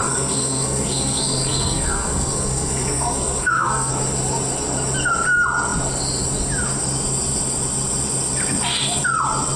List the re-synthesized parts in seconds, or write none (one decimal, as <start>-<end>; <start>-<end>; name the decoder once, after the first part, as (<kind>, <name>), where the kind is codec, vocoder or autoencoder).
0.0-3.9 (codec, SNAC)